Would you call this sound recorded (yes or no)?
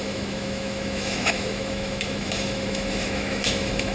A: no